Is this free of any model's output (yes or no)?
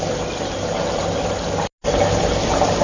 yes